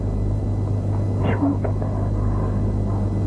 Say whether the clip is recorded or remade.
recorded